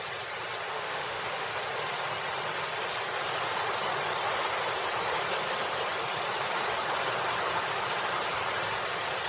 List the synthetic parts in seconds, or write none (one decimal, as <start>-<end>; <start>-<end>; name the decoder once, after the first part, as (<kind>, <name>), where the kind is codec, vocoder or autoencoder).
0.7-1.5 (autoencoder, DAC-VAE)